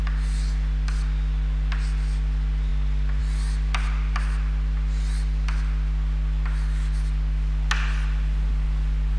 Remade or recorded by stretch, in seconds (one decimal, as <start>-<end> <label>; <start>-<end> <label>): 0.0-9.2 recorded